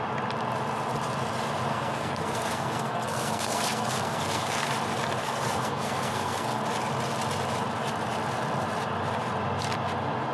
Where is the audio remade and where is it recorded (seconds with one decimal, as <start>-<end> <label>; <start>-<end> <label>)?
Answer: 0.0-1.7 recorded; 1.7-4.7 remade; 4.7-5.2 recorded; 5.2-6.6 remade; 6.6-10.3 recorded